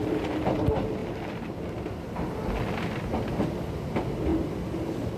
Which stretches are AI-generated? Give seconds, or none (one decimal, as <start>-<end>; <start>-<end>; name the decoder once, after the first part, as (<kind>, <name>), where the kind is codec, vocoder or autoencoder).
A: 4.3-5.2 (vocoder, BigVGAN v2)

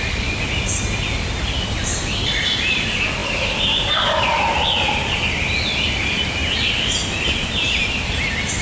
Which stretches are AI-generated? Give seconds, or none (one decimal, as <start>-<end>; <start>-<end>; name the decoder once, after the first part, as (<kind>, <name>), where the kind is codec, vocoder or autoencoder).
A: 6.4-7.5 (vocoder, BigVGAN v2)

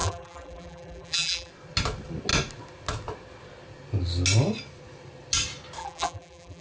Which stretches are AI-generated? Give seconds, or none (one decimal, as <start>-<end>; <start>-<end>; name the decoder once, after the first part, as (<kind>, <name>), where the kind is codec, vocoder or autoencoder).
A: 0.0-1.5 (vocoder, BigVGAN v2); 5.8-6.6

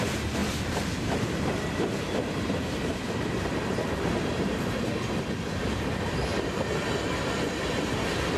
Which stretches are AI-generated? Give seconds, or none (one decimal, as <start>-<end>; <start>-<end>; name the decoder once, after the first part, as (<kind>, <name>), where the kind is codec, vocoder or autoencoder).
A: 0.4-4.8 (vocoder, BigVGAN v2)

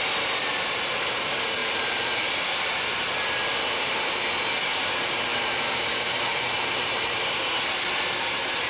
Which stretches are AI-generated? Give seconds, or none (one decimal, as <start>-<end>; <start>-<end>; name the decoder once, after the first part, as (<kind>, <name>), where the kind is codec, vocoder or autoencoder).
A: 1.6-2.8 (vocoder, BigVGAN v2); 5.3-7.2

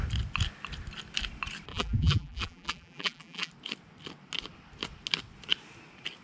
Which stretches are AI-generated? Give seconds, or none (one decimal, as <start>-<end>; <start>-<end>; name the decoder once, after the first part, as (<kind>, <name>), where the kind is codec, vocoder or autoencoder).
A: 1.7-3.5 (vocoder, BigVGAN v2)

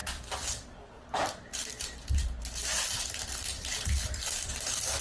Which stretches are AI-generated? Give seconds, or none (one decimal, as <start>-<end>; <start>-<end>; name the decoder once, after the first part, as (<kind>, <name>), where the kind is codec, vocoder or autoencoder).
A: none